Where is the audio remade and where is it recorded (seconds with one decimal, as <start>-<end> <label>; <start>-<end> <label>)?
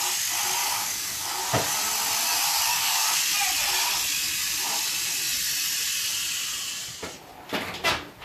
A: 0.0-0.6 recorded; 0.6-1.4 remade; 1.4-2.7 recorded; 2.7-3.3 remade; 3.3-8.2 recorded